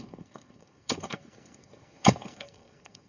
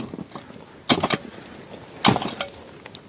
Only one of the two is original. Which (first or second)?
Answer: second